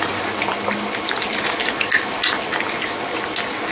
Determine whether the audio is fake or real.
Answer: real